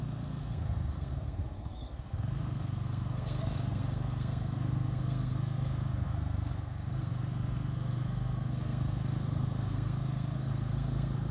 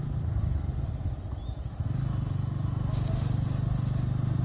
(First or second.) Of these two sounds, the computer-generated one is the first